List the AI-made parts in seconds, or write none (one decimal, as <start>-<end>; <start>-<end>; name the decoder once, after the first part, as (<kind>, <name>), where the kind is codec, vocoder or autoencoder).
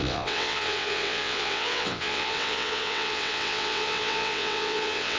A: 0.0-5.2 (vocoder, WaveNeXt)